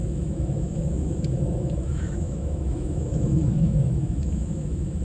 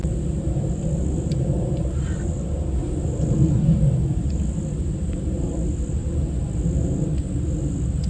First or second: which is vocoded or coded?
first